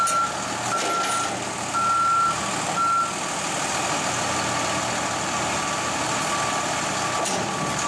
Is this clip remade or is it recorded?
recorded